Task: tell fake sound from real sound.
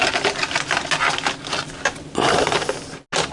real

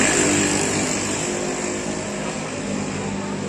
real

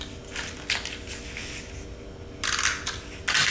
real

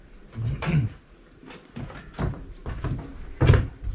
real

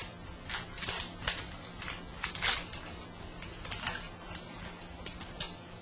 real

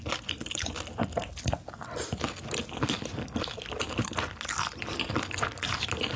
real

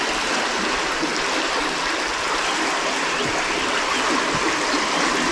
real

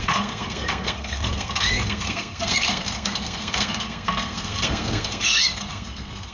fake